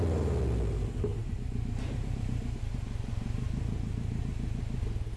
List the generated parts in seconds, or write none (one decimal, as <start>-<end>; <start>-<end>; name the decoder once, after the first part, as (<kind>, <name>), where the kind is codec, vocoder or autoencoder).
1.1-4.2 (vocoder, BigVGAN v2)